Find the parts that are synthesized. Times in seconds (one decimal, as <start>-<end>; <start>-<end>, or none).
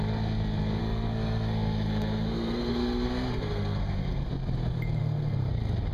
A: 0.8-4.3; 5.0-5.5